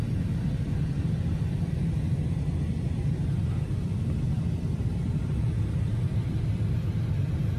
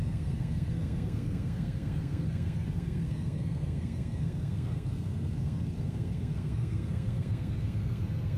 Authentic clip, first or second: first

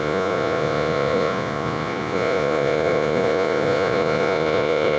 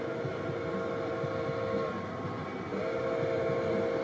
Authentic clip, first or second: second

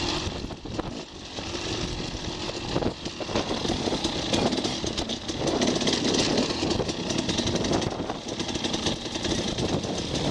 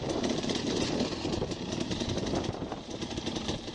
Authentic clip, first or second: first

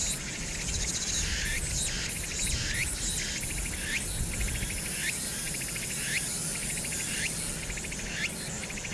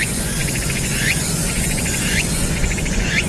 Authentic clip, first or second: first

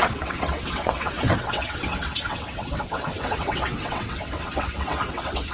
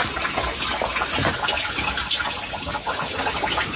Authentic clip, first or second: second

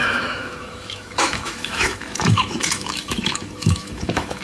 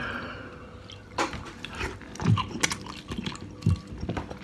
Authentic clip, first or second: second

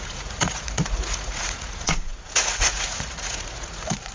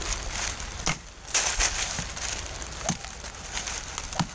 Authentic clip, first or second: second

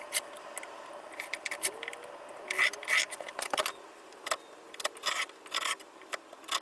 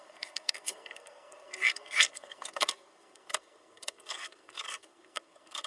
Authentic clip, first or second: first